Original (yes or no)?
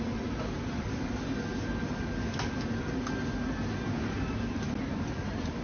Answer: yes